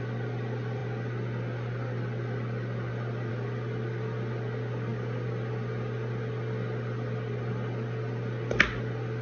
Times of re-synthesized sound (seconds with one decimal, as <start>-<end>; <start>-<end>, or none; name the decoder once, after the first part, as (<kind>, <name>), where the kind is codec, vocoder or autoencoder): none